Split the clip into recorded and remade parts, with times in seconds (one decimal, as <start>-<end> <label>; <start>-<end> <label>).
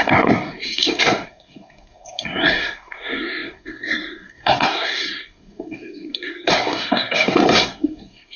0.0-8.4 remade